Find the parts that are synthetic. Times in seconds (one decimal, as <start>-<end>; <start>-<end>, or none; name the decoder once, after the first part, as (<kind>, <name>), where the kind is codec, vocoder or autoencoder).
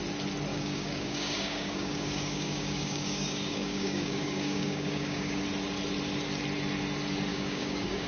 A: 0.5-5.4 (codec, DAC); 7.3-8.1